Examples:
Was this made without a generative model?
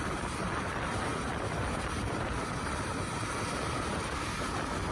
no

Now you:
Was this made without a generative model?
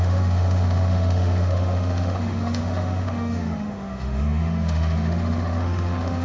no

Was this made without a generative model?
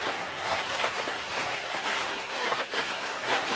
no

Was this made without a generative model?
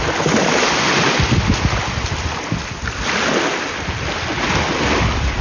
yes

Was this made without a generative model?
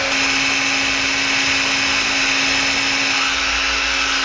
yes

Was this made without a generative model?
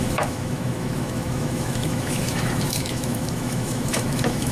no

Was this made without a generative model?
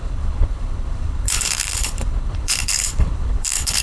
no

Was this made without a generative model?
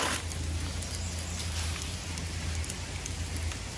yes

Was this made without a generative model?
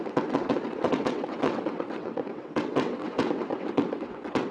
no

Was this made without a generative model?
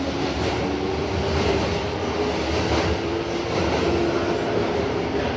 yes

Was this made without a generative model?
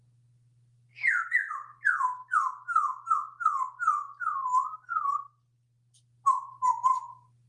yes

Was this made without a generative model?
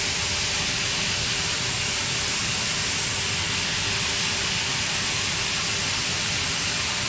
yes